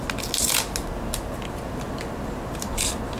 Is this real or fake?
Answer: real